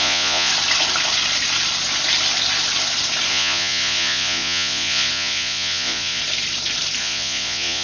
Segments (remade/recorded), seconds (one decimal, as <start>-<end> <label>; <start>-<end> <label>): 0.0-0.5 remade; 0.5-3.3 recorded; 3.3-6.2 remade; 6.2-7.0 recorded; 7.0-7.8 remade